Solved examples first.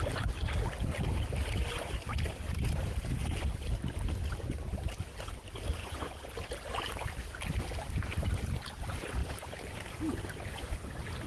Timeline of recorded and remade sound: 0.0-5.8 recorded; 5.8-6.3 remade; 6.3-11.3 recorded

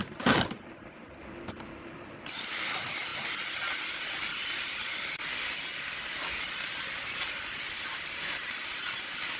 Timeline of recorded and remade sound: 0.0-9.4 recorded